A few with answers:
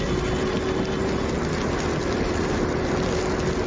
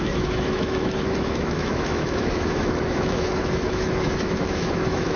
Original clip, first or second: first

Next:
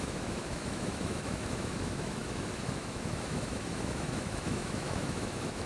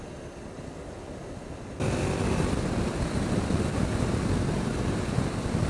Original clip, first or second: second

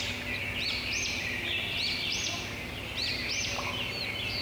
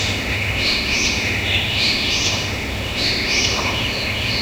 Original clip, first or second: first